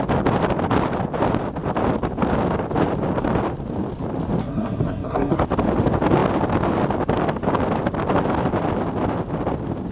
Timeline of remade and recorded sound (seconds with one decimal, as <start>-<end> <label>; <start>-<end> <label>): 0.0-4.4 recorded; 4.4-5.4 remade; 5.4-9.9 recorded